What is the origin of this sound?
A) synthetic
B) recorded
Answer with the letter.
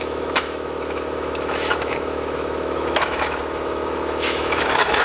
A